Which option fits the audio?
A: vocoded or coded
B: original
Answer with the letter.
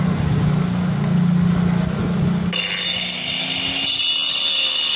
B